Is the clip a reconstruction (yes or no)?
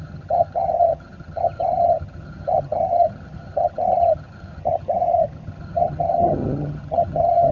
yes